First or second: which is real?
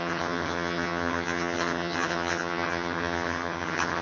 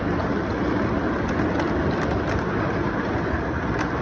second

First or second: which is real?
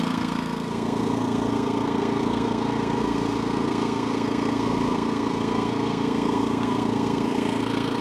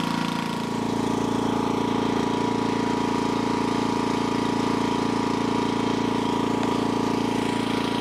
second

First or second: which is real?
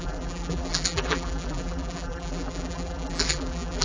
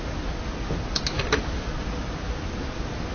second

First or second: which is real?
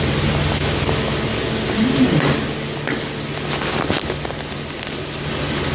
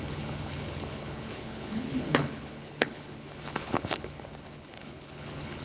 first